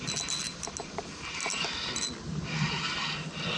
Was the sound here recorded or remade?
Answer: recorded